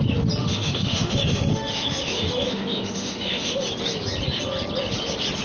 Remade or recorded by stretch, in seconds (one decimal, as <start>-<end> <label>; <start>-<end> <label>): 0.0-0.4 recorded; 0.4-3.6 remade; 3.6-5.4 recorded